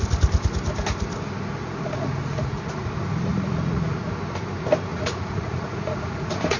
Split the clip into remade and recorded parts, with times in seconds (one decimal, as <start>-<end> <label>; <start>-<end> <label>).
0.0-1.6 recorded; 1.6-2.9 remade; 2.9-3.3 recorded; 3.3-4.1 remade; 4.1-4.9 recorded; 4.9-6.6 remade